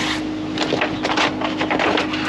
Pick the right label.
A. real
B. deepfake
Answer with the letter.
A